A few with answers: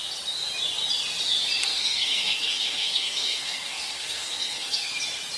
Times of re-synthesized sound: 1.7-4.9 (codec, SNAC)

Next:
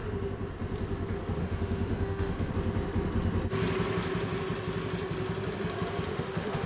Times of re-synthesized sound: 1.4-2.5 (autoencoder, DAC-VAE); 6.1-6.7

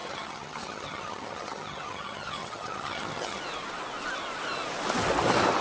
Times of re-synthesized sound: 0.0-3.4 (vocoder, HiFi-GAN)